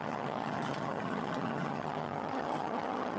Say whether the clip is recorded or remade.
remade